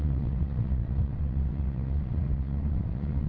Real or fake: fake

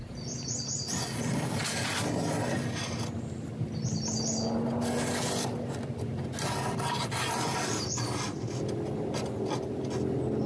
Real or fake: real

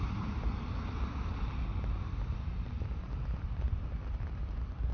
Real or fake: real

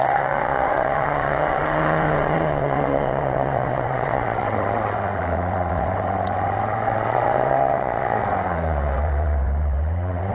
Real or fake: fake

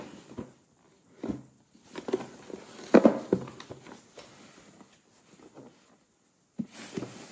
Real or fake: real